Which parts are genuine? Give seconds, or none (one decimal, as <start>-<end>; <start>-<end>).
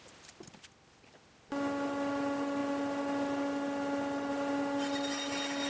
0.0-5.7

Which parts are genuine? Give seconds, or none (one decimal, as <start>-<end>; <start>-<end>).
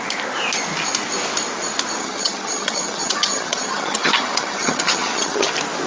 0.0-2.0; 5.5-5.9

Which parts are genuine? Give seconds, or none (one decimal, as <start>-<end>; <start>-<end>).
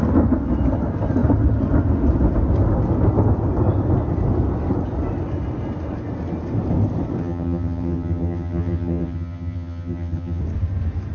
0.0-7.2; 10.4-11.1